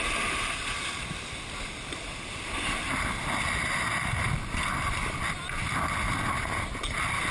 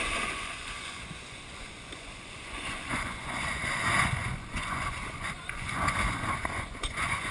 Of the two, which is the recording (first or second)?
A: first